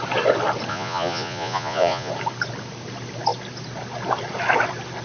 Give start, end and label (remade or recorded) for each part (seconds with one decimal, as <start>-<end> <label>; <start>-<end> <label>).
0.0-0.7 recorded; 0.7-2.1 remade; 2.1-5.0 recorded